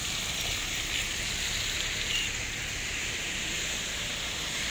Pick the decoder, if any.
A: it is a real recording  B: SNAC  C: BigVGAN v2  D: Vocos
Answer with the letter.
A